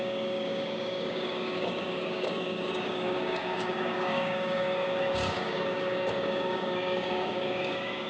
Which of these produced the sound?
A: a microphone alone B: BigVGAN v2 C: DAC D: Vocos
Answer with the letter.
C